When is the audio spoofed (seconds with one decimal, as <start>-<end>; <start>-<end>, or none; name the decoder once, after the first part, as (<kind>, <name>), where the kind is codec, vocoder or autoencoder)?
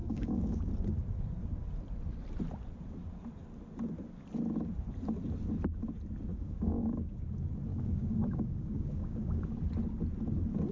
0.0-0.7 (codec, DAC); 6.3-7.2; 7.7-9.6